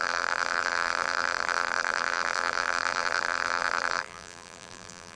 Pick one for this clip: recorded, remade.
remade